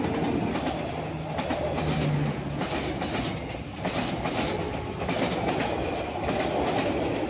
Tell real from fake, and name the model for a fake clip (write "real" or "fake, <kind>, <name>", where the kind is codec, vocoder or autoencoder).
real